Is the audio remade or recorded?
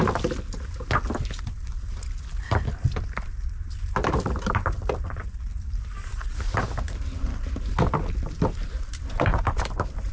recorded